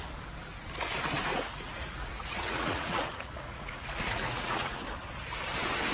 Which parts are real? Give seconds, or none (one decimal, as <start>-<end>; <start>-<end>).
0.0-1.3; 4.8-5.9